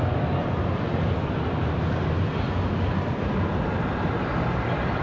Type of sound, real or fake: real